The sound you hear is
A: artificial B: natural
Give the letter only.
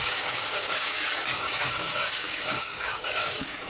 A